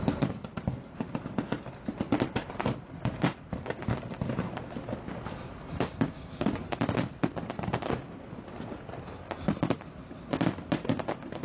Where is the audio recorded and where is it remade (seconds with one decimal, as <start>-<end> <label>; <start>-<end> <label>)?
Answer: 0.0-5.6 recorded; 5.6-6.3 remade; 6.3-11.4 recorded